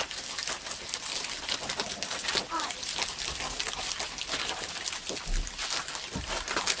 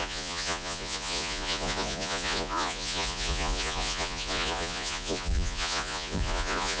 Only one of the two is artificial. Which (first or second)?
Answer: second